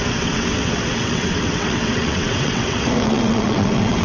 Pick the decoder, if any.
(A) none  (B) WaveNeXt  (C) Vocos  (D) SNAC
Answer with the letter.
B